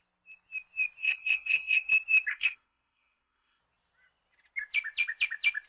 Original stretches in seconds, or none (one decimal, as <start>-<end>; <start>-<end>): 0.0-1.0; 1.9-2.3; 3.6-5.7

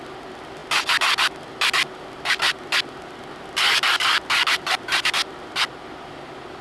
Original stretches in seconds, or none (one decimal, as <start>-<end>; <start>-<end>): 0.0-6.6

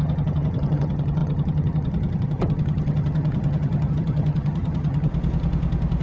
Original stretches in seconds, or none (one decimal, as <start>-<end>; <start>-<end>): 5.1-6.0

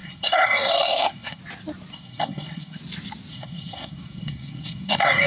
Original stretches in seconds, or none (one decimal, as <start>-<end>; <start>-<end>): 1.4-1.9; 2.8-3.3

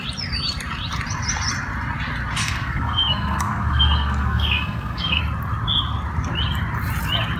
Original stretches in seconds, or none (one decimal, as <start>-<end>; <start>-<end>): 0.0-2.4; 5.2-7.4